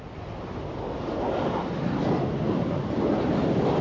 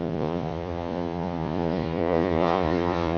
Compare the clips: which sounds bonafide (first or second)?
first